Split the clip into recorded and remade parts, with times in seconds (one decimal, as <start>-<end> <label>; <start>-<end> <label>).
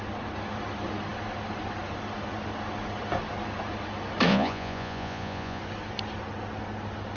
0.0-4.3 recorded; 4.3-5.6 remade; 5.6-7.2 recorded